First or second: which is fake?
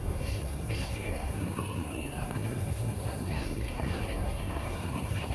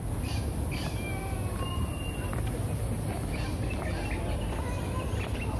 first